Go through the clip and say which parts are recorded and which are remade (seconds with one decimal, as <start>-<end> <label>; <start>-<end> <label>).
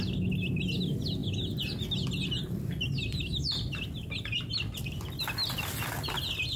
0.0-1.2 recorded; 1.2-5.2 remade; 5.2-6.6 recorded